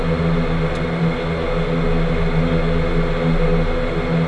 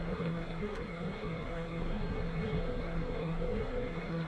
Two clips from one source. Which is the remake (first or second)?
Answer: second